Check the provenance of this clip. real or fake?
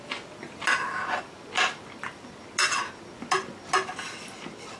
real